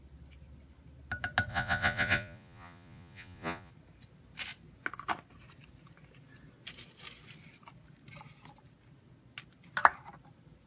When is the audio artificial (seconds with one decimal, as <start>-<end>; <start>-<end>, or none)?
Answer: 1.5-3.7